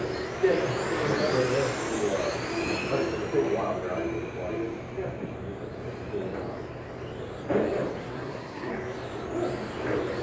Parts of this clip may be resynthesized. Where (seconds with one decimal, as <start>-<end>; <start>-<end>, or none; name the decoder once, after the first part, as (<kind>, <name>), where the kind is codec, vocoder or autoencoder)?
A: 8.0-8.7 (codec, SNAC)